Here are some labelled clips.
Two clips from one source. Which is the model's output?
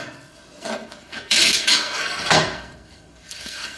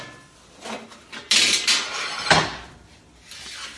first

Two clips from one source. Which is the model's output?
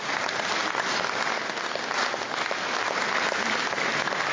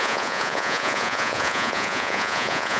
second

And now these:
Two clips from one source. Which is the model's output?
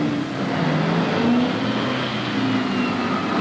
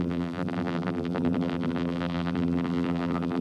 second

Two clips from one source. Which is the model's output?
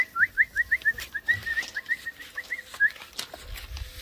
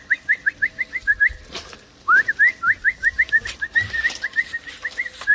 second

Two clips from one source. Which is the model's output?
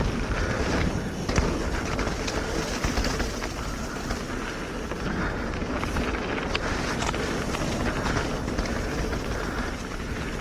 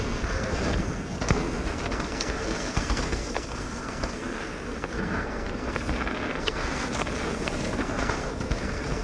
second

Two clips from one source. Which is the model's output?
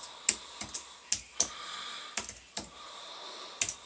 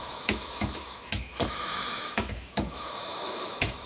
second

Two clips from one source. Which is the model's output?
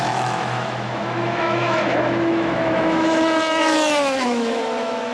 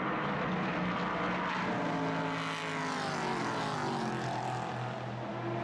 first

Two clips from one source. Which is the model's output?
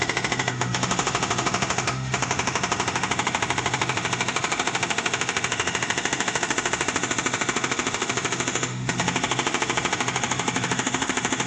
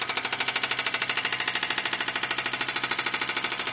first